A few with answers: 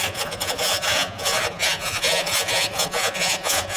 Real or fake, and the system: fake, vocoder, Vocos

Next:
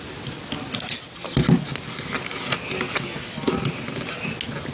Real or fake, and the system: real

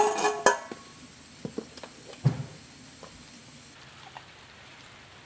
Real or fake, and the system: real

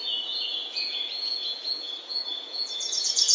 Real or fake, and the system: fake, vocoder, Vocos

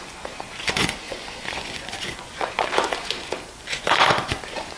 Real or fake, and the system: fake, vocoder, Vocos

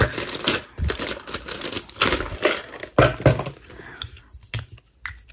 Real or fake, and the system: real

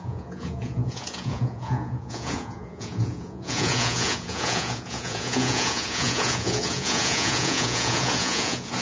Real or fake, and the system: fake, vocoder, Vocos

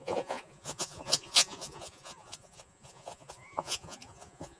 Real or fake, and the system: fake, vocoder, Vocos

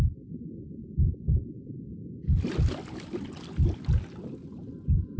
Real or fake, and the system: real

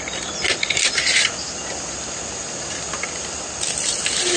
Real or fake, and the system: real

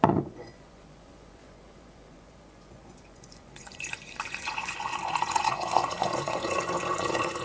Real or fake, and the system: fake, vocoder, Vocos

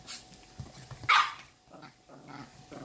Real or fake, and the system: real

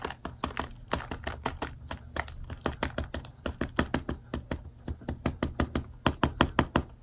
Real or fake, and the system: real